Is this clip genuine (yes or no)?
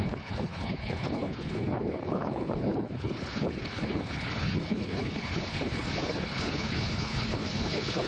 no